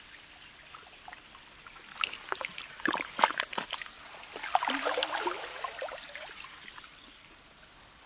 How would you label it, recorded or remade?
recorded